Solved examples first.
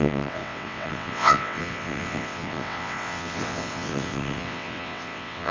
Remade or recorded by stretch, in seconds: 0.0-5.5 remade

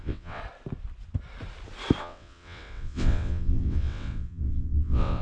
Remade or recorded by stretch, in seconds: 0.0-0.4 remade; 0.4-2.0 recorded; 2.0-5.2 remade

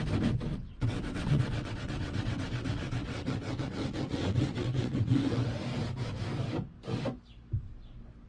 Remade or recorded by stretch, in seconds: 0.0-0.5 recorded; 0.5-5.5 remade; 5.5-8.3 recorded

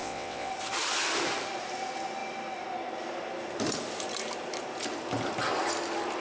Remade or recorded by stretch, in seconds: 0.0-0.5 remade; 0.5-6.2 recorded